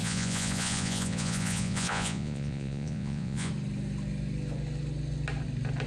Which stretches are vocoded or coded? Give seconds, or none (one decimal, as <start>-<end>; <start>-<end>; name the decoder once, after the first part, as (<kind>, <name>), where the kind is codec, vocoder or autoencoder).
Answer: 0.0-3.5 (vocoder, Vocos)